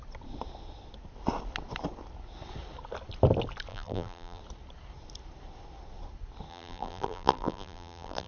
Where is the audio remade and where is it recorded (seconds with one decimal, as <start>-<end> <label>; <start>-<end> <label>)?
0.0-3.7 recorded; 3.7-4.4 remade; 4.4-6.5 recorded; 6.5-8.3 remade